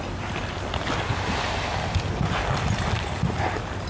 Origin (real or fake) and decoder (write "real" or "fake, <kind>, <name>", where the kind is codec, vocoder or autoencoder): real